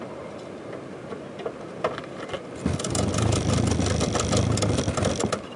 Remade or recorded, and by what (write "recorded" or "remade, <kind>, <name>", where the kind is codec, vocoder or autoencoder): recorded